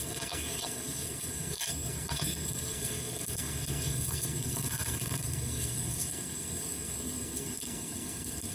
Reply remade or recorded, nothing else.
remade